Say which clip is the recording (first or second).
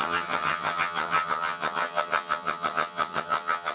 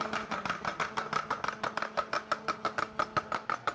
second